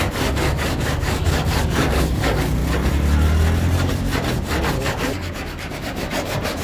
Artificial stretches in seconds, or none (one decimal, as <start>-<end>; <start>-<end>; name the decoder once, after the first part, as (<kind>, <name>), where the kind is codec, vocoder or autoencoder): 0.0-2.6 (codec, DAC); 4.8-6.6